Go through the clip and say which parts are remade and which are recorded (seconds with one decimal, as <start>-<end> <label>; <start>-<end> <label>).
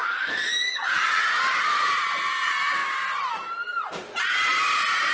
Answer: 0.0-0.7 recorded; 0.7-1.2 remade; 1.2-5.1 recorded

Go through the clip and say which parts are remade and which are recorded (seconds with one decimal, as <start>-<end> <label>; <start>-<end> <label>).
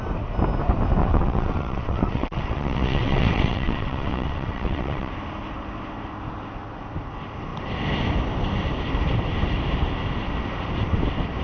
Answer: 0.0-1.0 recorded; 1.0-5.1 remade; 5.1-11.4 recorded